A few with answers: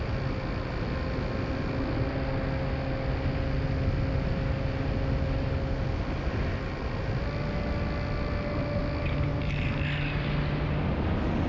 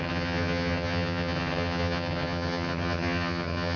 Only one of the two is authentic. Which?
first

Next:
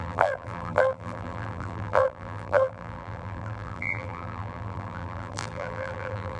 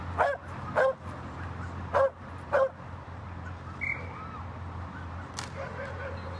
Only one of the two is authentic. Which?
second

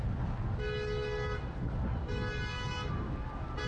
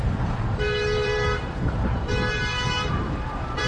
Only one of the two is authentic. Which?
first